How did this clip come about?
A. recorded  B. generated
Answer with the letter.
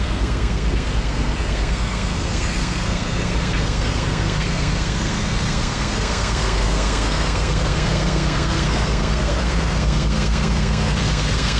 B